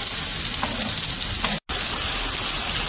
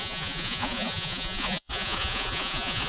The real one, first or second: first